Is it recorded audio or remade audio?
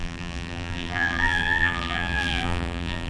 remade